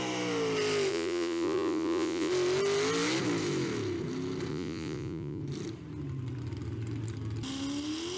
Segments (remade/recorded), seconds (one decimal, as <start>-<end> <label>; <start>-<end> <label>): 0.0-0.9 recorded; 0.9-2.3 remade; 2.3-4.5 recorded; 4.5-5.4 remade; 5.4-8.2 recorded